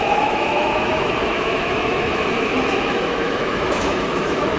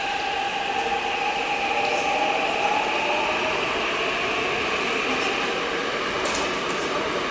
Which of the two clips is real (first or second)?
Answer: second